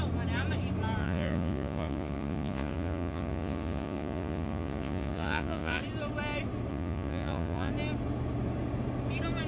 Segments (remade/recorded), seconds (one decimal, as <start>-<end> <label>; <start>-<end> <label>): 0.0-1.0 recorded; 1.0-5.8 remade; 5.8-6.7 recorded; 6.7-7.7 remade; 7.7-9.5 recorded